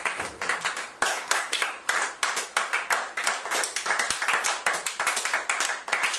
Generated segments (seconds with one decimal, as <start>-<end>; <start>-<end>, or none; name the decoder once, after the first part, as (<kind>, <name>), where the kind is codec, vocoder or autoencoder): 1.1-1.7 (codec, SNAC)